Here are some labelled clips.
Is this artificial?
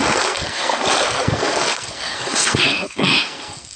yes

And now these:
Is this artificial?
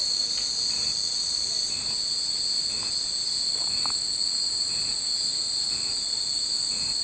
no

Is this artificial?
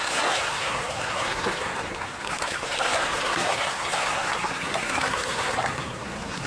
yes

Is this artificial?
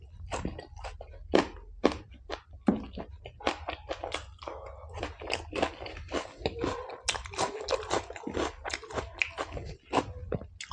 no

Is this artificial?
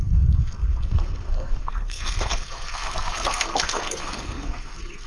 yes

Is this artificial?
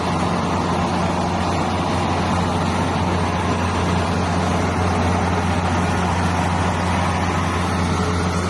no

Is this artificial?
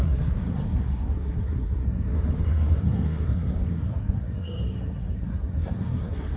yes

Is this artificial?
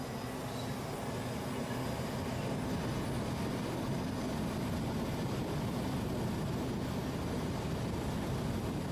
no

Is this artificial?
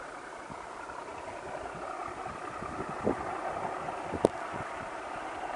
no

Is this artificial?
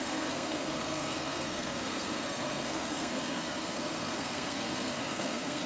yes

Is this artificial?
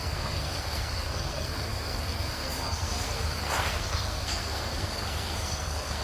yes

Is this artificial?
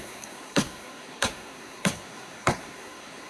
yes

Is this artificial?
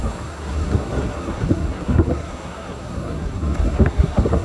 yes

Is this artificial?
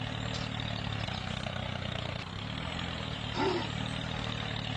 no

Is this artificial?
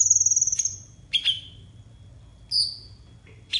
no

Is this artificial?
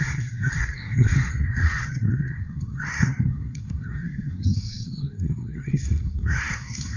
yes